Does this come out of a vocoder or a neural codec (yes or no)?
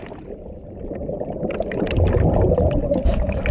no